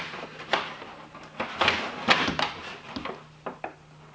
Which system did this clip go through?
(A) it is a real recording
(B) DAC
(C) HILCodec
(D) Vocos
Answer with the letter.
A